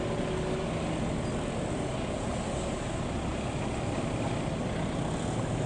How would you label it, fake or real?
real